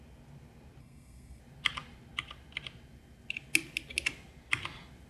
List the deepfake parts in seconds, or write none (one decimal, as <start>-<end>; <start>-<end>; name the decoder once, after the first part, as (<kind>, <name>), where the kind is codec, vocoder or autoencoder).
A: 0.8-1.4 (codec, SNAC)